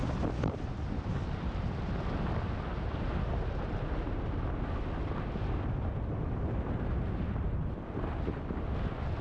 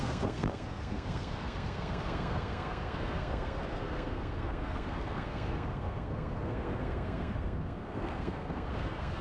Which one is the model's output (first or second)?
second